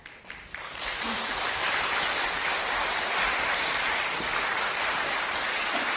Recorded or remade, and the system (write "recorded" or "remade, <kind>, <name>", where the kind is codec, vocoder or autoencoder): recorded